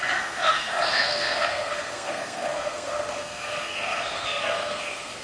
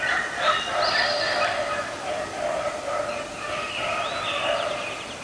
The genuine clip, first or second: second